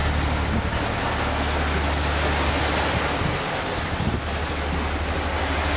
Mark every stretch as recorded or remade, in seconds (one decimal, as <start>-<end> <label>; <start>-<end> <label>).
0.0-5.8 recorded